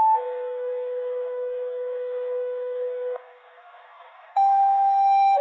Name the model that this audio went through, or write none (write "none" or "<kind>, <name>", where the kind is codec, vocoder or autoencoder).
codec, DAC